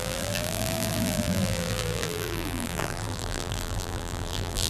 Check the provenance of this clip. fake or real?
fake